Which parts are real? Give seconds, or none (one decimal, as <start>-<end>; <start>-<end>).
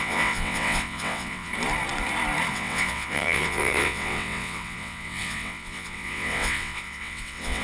1.5-2.5